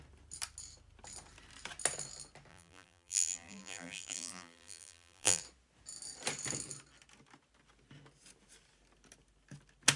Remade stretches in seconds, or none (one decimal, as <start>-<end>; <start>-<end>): 2.5-5.4